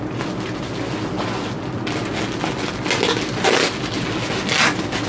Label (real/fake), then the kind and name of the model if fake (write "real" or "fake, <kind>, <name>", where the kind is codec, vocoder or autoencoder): real